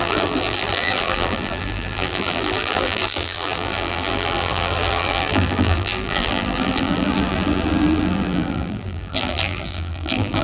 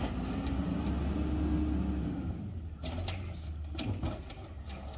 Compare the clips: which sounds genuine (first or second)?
second